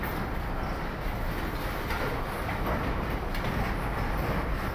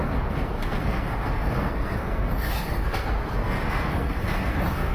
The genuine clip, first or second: first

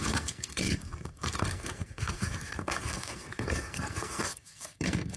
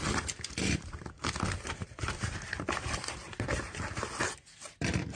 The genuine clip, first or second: second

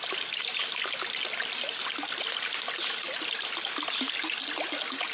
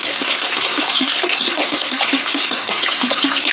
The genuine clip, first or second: first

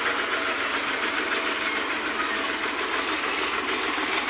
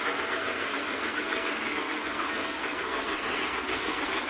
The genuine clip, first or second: first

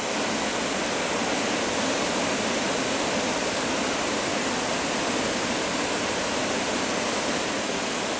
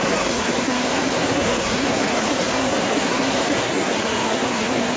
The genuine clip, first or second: first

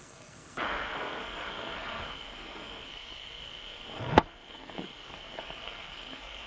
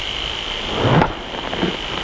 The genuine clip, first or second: second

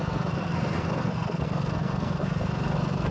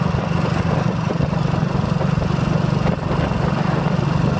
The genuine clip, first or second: second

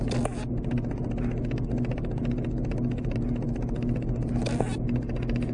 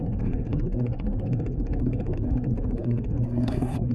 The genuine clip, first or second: first